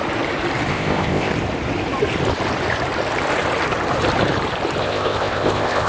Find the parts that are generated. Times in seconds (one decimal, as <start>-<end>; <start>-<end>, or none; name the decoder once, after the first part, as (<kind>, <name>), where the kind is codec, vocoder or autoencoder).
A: 0.7-1.3 (codec, ZipCodec); 4.8-5.9

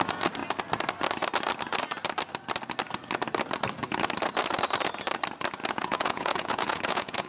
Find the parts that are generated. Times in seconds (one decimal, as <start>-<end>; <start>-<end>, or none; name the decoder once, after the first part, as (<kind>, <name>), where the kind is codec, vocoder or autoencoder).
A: 5.6-7.3 (vocoder, Vocos)